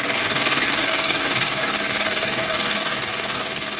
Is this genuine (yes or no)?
no